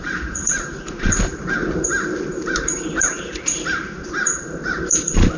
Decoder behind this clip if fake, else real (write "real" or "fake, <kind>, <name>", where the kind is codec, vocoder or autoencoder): fake, vocoder, BigVGAN v2